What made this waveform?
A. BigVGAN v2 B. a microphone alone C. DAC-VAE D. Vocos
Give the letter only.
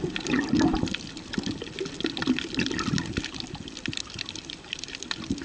A